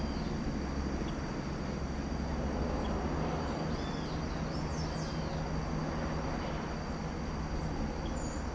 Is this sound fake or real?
real